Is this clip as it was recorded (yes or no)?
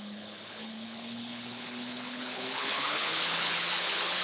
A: no